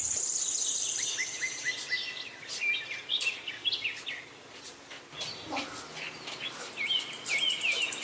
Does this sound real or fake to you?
real